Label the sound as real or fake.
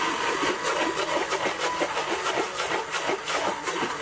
real